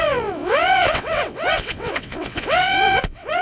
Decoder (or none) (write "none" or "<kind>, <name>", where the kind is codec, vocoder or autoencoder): vocoder, WaveNeXt